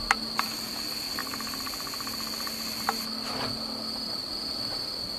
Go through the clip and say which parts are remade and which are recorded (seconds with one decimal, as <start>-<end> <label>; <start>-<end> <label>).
0.0-5.2 recorded